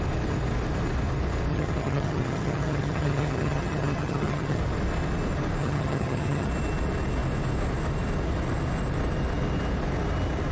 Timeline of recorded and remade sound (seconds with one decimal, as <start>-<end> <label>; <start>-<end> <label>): 0.0-1.5 recorded; 1.5-4.6 remade; 4.6-5.6 recorded; 5.6-6.5 remade; 6.5-10.5 recorded